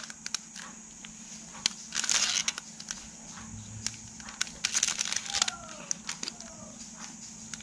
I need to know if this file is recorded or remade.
recorded